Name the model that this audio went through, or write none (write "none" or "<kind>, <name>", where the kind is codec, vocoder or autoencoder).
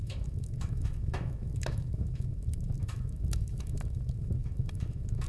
autoencoder, DAC-VAE